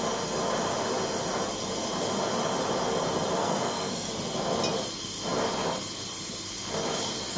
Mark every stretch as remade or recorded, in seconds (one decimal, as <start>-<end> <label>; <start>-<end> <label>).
0.0-3.4 recorded; 3.4-4.1 remade; 4.1-7.4 recorded